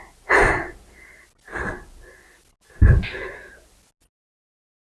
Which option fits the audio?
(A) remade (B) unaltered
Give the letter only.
B